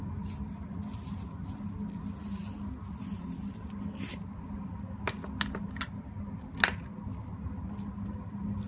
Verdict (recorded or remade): recorded